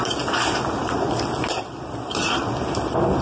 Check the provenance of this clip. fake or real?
real